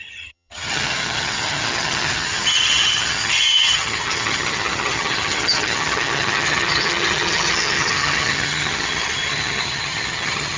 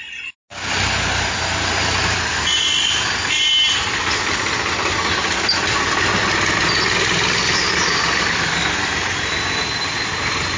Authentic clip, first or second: second